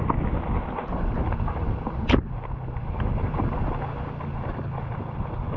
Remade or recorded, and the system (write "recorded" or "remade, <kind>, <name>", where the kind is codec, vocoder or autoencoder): recorded